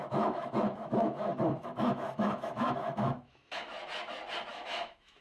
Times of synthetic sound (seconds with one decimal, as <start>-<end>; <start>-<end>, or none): 0.0-3.7; 4.5-5.2